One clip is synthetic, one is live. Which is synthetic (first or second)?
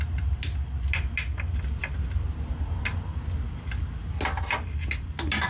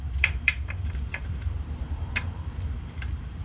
second